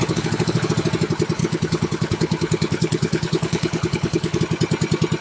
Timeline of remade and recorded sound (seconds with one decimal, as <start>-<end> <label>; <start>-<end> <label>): 0.0-0.7 remade; 0.7-1.4 recorded; 1.4-4.4 remade; 4.4-5.2 recorded